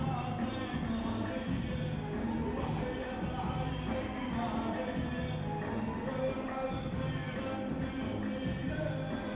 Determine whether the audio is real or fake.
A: real